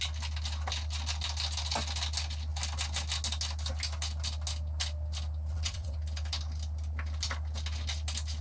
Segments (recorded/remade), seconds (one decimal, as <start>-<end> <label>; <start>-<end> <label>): 0.0-5.5 recorded; 5.5-6.0 remade; 6.0-8.4 recorded